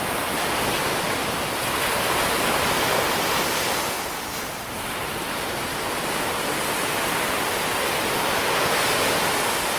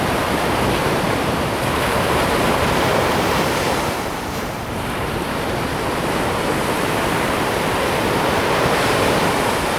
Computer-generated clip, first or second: second